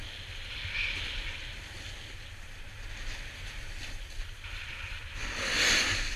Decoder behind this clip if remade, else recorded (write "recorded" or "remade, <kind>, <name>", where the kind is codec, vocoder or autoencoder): recorded